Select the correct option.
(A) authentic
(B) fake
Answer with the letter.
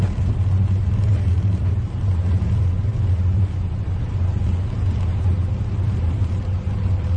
A